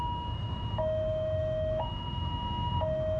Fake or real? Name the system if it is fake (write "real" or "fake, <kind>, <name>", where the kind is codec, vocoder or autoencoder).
fake, autoencoder, DAC-VAE